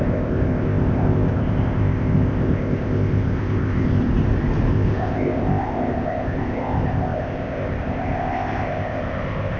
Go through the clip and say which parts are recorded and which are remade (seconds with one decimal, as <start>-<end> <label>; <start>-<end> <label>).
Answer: 0.0-4.0 remade; 4.0-4.7 recorded; 4.7-9.6 remade